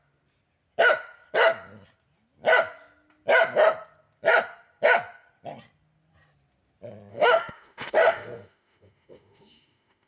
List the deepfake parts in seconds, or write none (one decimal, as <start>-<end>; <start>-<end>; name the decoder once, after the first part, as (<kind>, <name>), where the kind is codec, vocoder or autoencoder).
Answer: 7.1-10.1 (autoencoder, DAC-VAE)